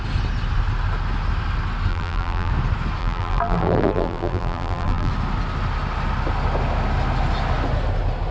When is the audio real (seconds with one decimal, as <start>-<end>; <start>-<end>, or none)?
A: 0.0-1.9; 2.5-3.0; 5.1-8.3

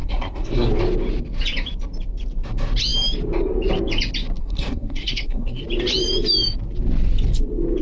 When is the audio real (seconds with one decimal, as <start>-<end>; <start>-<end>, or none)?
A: 0.7-4.4; 5.6-7.8

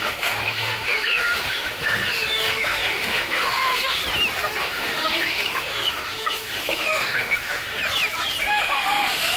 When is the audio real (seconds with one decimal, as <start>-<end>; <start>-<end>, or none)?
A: 4.0-4.6; 7.8-8.4

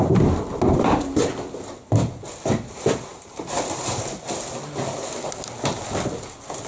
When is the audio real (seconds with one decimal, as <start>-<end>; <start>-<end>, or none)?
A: 0.0-3.1; 4.2-6.7

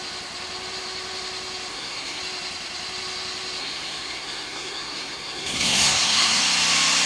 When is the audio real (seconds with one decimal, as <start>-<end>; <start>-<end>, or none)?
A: 0.0-1.7; 2.2-3.6; 6.4-7.1

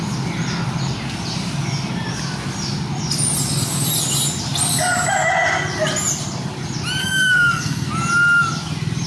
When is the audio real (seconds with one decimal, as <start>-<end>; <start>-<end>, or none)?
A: 0.0-7.0; 7.9-9.1

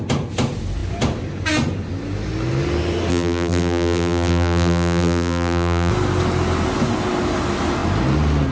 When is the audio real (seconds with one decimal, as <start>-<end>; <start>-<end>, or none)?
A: 0.0-3.1; 5.9-8.5

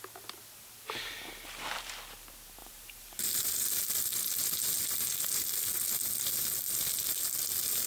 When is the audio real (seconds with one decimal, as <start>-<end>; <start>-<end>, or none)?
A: 0.0-2.6; 3.5-7.9